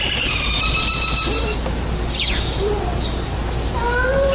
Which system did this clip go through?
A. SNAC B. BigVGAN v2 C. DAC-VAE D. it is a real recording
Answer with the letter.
D